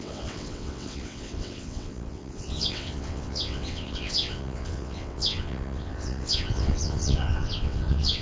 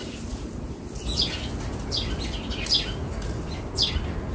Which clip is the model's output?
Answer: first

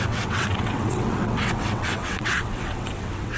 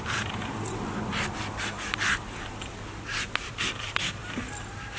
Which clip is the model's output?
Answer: first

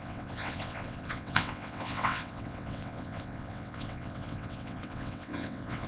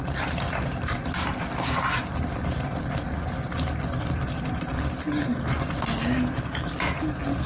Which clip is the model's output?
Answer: first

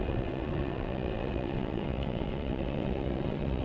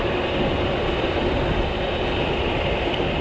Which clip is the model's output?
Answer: first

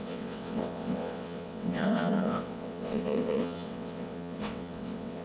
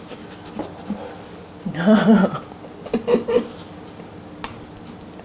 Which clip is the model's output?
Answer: first